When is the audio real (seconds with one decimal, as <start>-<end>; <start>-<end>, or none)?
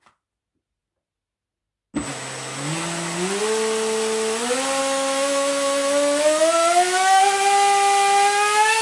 0.0-4.8; 7.2-8.8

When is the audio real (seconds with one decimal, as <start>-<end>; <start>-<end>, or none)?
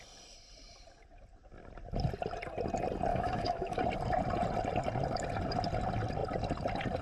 0.0-3.1; 3.8-7.0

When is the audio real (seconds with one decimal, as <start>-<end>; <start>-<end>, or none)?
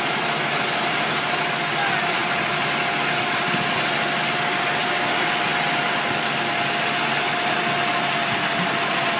0.0-9.2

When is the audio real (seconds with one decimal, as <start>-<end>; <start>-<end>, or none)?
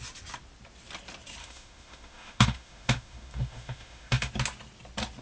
0.0-1.4; 4.3-5.2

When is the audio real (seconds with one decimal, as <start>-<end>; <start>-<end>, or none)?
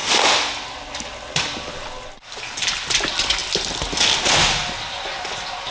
0.0-5.7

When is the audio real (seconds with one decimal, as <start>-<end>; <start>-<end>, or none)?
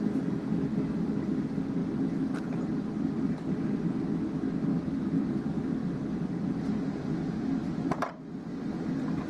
0.0-4.7; 5.3-9.3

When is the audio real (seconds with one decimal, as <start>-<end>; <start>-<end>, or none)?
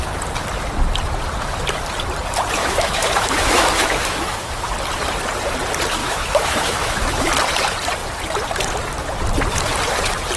0.0-2.6; 4.7-6.0; 7.3-10.4